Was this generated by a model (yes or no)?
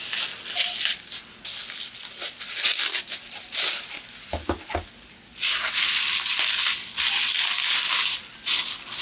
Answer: no